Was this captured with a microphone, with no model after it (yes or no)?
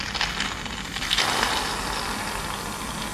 yes